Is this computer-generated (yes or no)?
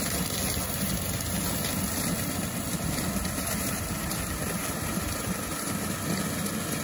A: no